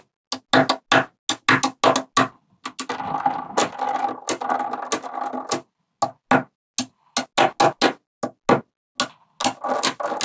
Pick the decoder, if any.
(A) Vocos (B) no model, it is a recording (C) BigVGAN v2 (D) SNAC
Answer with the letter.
B